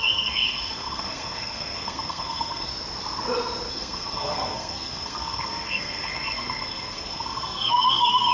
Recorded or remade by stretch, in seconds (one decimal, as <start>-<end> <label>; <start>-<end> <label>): 0.0-2.7 remade; 2.7-3.7 recorded; 3.7-8.3 remade